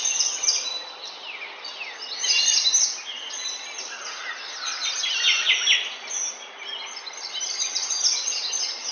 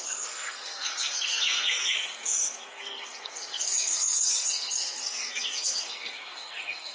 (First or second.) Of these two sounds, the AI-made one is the second